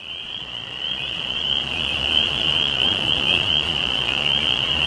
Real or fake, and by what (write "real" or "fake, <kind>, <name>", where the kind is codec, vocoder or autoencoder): fake, vocoder, Vocos